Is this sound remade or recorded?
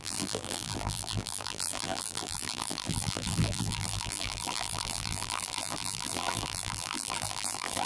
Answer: remade